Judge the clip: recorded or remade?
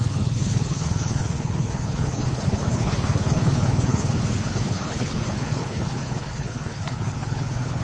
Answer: remade